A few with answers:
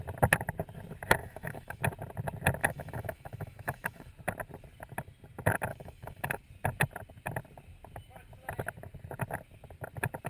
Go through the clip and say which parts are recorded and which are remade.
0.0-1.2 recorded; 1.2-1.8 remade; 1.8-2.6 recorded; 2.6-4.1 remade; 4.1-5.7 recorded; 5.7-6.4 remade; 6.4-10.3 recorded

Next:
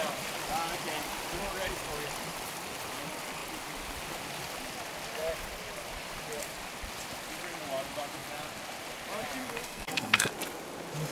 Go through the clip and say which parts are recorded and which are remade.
0.0-9.4 recorded; 9.4-10.3 remade; 10.3-11.1 recorded

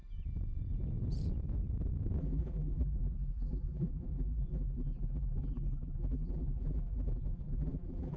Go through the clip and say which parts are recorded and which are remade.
0.0-2.2 recorded; 2.2-8.2 remade

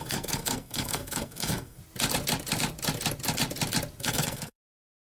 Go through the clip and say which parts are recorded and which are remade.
0.0-1.8 remade; 1.8-4.0 recorded; 4.0-5.1 remade